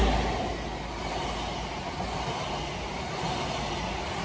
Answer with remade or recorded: recorded